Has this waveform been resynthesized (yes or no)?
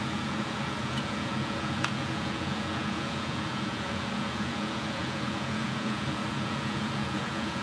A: yes